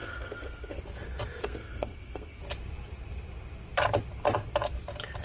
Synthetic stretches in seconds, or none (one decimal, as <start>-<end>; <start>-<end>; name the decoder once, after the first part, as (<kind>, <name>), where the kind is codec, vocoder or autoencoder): 0.0-0.8 (codec, SNAC); 1.4-2.4